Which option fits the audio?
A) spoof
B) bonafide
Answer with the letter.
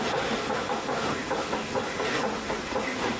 A